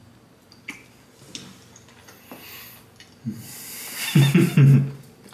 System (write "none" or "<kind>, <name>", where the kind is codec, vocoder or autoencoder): none